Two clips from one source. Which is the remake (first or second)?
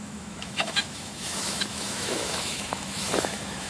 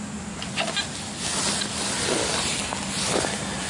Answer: first